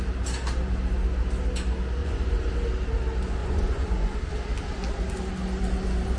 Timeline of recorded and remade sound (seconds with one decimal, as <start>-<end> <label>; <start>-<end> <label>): 0.0-2.0 recorded; 2.0-2.5 remade; 2.5-3.4 recorded; 3.4-4.2 remade; 4.2-6.2 recorded